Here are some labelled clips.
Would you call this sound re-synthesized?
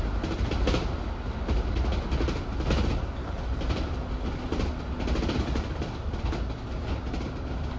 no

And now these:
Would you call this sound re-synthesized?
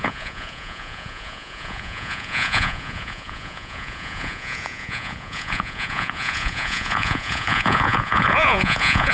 yes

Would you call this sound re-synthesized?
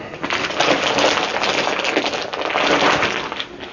no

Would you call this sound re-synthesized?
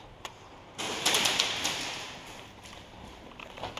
yes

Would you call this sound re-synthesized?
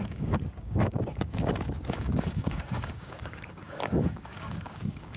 yes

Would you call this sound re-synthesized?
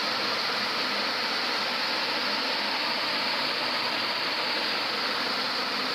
no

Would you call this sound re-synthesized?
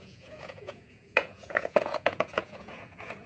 yes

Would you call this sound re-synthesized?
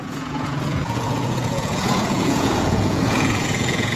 yes